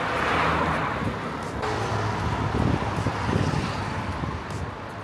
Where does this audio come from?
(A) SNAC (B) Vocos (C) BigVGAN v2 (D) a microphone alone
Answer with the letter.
D